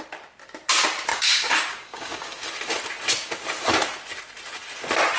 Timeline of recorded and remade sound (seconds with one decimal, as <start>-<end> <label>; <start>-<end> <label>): 0.0-1.1 recorded; 1.1-2.5 remade; 2.5-5.2 recorded